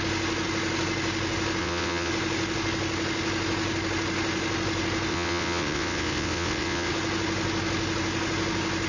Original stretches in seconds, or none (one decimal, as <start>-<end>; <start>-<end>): 0.0-1.6; 2.1-5.1; 6.9-8.9

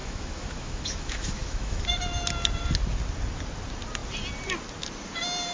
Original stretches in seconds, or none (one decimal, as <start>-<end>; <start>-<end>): 1.8-5.5

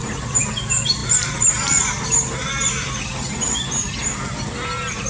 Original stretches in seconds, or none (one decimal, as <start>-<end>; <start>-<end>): 0.0-5.1

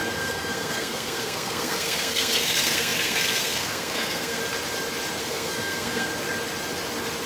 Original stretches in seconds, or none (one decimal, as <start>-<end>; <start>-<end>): 4.4-5.2; 6.1-7.3